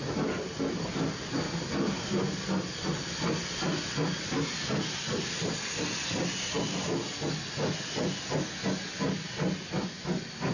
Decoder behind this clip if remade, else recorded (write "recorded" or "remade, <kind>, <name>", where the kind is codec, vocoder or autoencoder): recorded